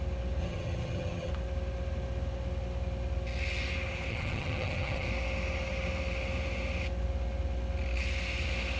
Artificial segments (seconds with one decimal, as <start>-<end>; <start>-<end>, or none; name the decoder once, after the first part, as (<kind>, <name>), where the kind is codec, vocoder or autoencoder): 0.4-1.3 (vocoder, HiFi-GAN); 4.1-5.1